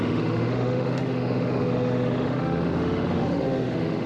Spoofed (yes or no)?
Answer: yes